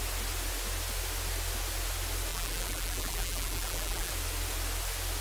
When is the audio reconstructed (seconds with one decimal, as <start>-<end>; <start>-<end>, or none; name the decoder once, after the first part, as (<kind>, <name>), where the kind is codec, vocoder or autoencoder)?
2.3-4.1 (vocoder, BigVGAN v2)